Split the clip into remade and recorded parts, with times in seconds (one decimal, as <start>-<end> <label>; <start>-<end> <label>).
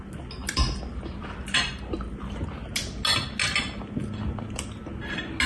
0.0-0.4 recorded; 0.4-1.7 remade; 1.7-5.5 recorded